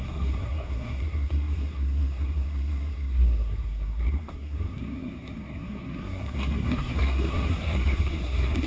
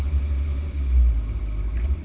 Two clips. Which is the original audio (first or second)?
second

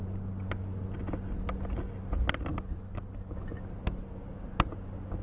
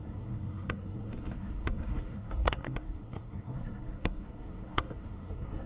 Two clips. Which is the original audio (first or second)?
first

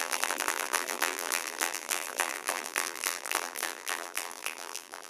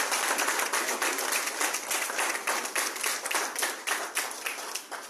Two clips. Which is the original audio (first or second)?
second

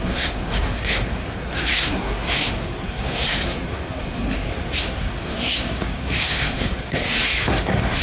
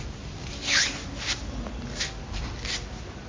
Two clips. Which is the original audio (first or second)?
second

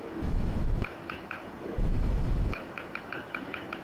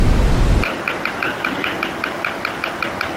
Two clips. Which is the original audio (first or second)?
second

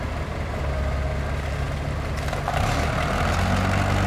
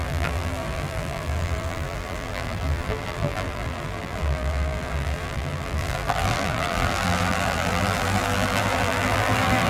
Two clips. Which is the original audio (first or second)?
first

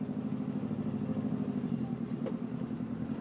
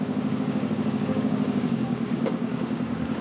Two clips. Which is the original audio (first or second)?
first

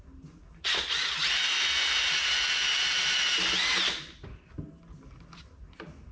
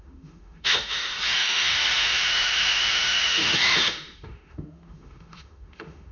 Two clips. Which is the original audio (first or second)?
first